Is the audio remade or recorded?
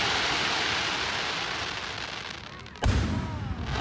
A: recorded